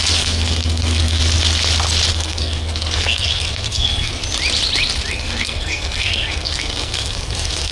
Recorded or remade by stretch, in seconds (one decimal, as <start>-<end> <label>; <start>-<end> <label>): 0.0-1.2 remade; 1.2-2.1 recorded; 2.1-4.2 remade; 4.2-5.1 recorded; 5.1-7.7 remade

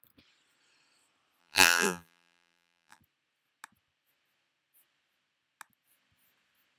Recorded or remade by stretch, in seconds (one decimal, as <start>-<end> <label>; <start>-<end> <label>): 0.0-1.4 recorded; 1.4-3.0 remade; 3.0-6.8 recorded

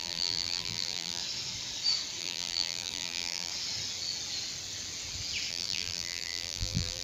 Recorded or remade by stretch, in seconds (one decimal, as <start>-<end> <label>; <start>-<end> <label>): 0.0-1.2 remade; 1.2-2.2 recorded; 2.2-3.5 remade; 3.5-5.5 recorded; 5.5-7.0 remade

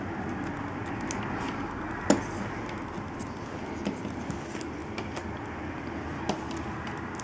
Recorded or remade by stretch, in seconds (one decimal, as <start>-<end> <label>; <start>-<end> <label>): 0.0-7.2 recorded

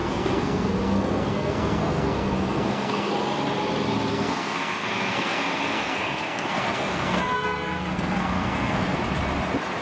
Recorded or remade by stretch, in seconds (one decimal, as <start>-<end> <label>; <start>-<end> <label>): 0.0-3.1 remade; 3.1-4.1 recorded; 4.1-9.0 remade; 9.0-9.8 recorded